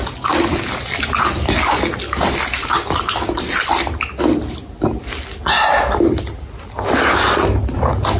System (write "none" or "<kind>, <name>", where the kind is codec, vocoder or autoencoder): none